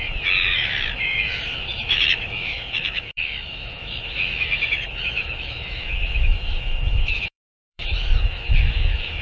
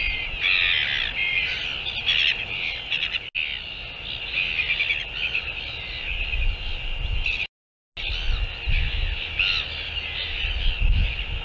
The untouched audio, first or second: second